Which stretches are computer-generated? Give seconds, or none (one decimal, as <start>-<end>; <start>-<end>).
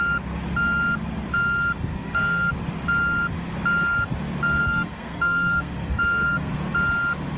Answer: 1.9-2.5; 4.6-6.5